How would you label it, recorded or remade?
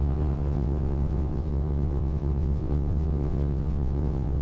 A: remade